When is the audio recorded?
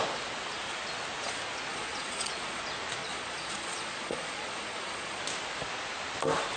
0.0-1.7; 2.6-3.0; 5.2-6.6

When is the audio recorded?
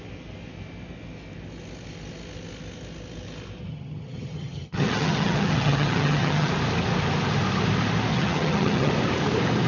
0.0-3.6; 6.5-8.1; 8.9-9.7